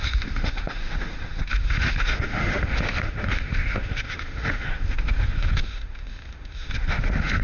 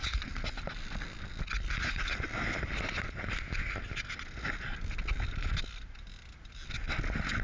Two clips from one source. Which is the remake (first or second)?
first